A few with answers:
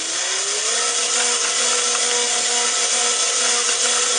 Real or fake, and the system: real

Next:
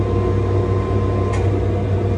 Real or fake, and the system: real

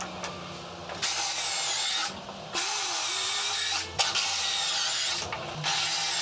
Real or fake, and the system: real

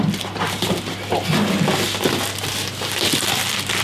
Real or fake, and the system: real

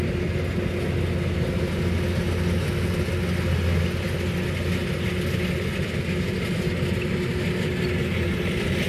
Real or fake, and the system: real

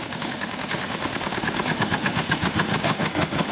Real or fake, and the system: fake, autoencoder, DAC-VAE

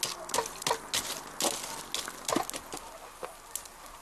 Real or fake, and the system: real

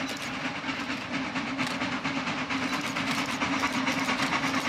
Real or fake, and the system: real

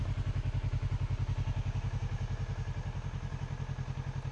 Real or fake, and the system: real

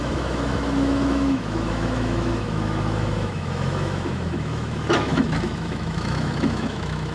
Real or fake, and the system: fake, autoencoder, DAC-VAE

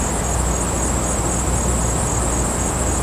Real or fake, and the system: real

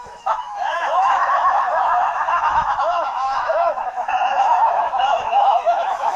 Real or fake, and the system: fake, autoencoder, DAC-VAE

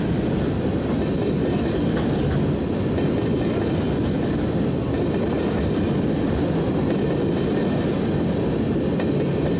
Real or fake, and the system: real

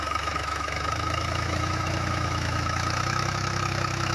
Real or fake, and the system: fake, autoencoder, DAC-VAE